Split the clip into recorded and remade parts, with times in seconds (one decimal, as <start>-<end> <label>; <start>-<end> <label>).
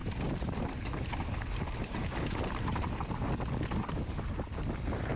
0.0-5.2 recorded